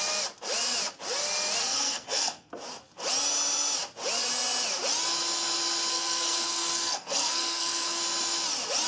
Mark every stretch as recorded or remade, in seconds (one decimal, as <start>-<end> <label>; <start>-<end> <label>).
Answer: 0.0-1.6 recorded; 1.6-2.5 remade; 2.5-5.9 recorded; 5.9-8.0 remade; 8.0-8.9 recorded